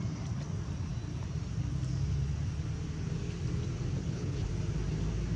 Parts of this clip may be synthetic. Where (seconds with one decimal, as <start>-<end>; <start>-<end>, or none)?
4.0-4.5